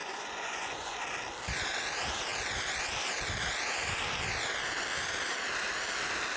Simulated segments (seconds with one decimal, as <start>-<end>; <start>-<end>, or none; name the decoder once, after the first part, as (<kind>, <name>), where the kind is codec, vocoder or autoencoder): 0.0-1.0 (vocoder, Vocos)